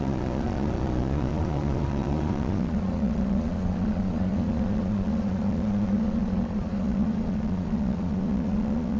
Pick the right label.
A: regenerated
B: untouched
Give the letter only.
A